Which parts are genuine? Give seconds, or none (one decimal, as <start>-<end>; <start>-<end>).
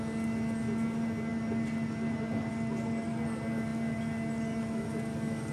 0.0-5.5